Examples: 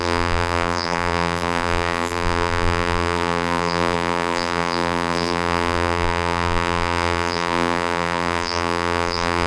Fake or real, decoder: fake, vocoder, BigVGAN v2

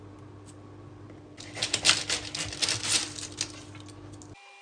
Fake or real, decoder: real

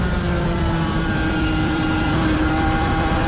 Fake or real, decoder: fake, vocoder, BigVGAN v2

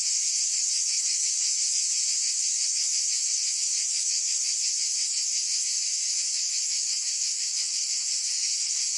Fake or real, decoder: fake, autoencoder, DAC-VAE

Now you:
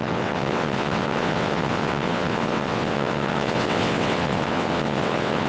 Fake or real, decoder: fake, vocoder, WaveNeXt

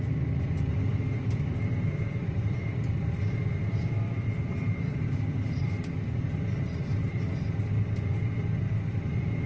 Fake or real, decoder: fake, vocoder, BigVGAN v2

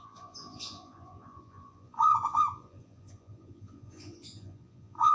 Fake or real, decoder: fake, vocoder, Vocos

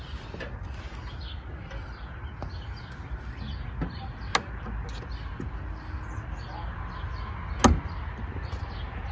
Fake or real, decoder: real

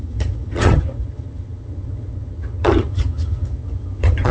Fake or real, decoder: fake, vocoder, HiFi-GAN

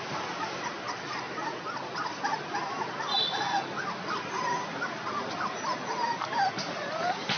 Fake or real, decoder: real